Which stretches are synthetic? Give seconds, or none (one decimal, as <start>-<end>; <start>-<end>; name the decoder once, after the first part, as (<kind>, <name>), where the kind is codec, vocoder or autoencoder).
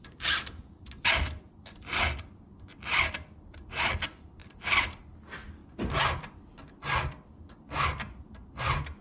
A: 4.4-5.0 (vocoder, BigVGAN v2)